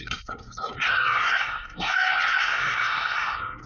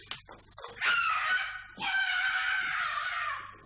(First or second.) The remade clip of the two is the first